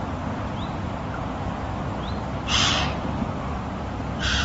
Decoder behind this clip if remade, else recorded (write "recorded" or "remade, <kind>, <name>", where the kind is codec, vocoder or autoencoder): recorded